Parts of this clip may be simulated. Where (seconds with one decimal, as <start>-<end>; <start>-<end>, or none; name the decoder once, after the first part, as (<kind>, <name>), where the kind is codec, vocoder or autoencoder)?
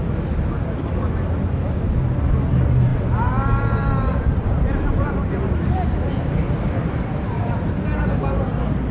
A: none